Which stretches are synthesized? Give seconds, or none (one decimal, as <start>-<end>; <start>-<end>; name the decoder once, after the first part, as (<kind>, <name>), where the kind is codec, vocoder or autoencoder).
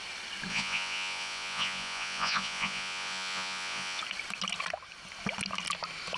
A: 0.5-4.0 (vocoder, Vocos)